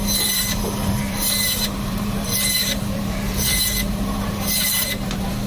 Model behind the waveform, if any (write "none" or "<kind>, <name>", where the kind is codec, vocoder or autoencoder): vocoder, BigVGAN v2